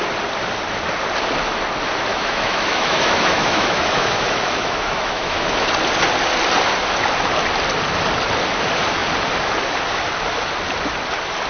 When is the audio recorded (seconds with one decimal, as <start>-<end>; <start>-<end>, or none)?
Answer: 0.0-2.1; 5.7-11.5